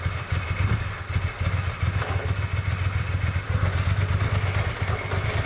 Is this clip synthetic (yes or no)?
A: no